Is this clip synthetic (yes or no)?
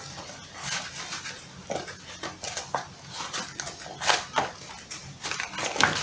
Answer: no